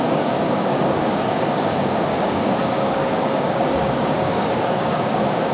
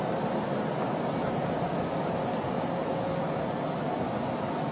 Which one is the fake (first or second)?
first